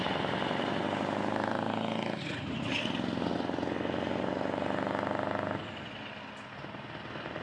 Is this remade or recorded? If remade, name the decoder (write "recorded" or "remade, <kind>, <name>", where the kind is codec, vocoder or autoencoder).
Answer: recorded